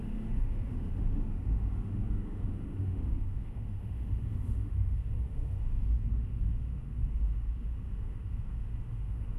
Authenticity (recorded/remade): remade